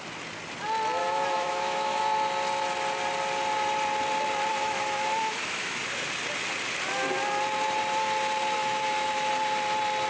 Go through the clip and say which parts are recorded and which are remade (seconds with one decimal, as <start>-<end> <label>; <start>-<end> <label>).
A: 0.0-1.0 recorded; 1.0-2.0 remade; 2.0-4.5 recorded; 4.5-5.8 remade; 5.8-8.6 recorded; 8.6-9.3 remade; 9.3-10.1 recorded